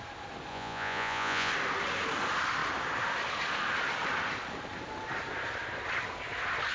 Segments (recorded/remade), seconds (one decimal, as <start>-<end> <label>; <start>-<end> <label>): 0.0-0.5 recorded; 0.5-1.5 remade; 1.5-6.7 recorded